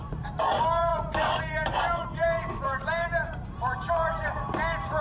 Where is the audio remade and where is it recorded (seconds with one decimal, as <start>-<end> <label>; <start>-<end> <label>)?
0.0-5.0 remade